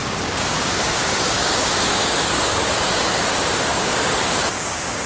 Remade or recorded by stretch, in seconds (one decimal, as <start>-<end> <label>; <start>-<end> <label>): 0.0-3.1 remade; 3.1-3.7 recorded; 3.7-5.1 remade